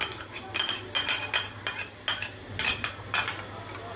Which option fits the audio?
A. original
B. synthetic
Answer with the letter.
A